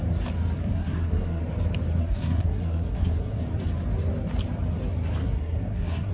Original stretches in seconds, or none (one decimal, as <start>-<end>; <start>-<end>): 0.0-0.6; 1.4-2.0; 3.4-5.2